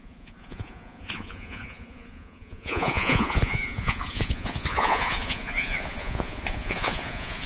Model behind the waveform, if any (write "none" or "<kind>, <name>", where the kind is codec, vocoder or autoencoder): vocoder, Vocos